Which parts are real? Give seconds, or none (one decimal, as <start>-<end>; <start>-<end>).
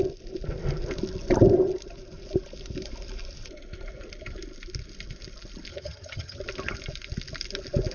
0.0-5.7; 6.4-7.9